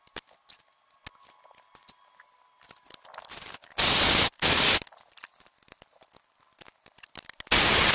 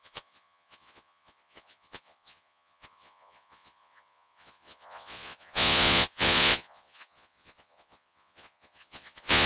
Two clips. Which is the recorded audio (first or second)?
first